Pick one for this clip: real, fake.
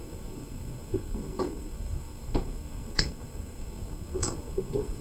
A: fake